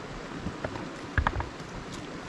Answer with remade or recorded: recorded